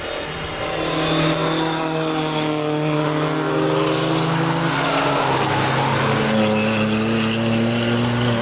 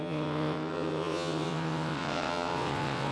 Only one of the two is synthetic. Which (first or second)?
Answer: second